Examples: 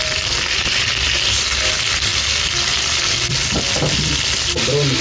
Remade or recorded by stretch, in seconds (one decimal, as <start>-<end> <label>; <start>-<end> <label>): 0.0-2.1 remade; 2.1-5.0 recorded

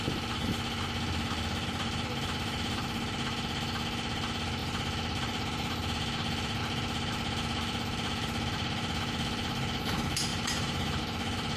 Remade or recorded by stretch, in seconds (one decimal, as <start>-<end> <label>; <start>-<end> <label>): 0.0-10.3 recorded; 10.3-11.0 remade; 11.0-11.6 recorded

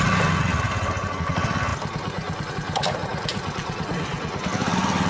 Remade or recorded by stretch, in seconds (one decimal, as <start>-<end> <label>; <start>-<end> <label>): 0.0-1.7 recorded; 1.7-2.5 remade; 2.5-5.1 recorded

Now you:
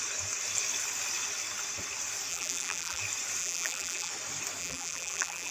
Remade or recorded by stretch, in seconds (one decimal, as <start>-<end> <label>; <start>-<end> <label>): 0.0-2.3 recorded; 2.3-3.0 remade; 3.0-3.4 recorded; 3.4-4.1 remade; 4.1-4.6 recorded; 4.6-5.5 remade

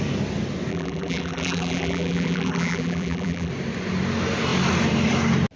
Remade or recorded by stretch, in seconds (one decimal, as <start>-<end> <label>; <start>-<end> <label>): 0.0-0.7 recorded; 0.7-3.5 remade; 3.5-5.6 recorded

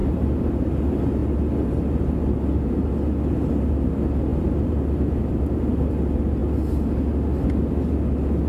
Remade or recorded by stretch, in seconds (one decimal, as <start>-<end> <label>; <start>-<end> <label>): 0.0-0.5 remade; 0.5-4.3 recorded; 4.3-5.9 remade; 5.9-8.5 recorded